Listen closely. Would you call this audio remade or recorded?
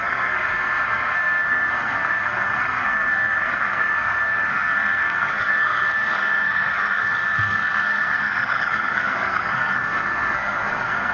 remade